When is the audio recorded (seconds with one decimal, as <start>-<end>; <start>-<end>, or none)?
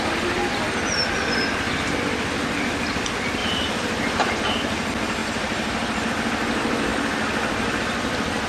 0.0-3.4; 4.2-5.2; 6.1-8.5